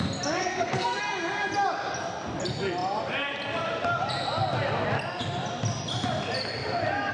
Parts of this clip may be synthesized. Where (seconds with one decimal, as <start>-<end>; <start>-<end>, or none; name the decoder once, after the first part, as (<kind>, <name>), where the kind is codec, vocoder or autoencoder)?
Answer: 0.4-1.0 (codec, SNAC)